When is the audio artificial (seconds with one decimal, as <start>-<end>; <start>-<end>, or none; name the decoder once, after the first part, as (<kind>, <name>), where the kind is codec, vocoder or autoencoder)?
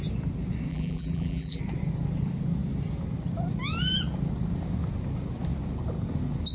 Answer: 0.7-1.6 (vocoder, BigVGAN v2)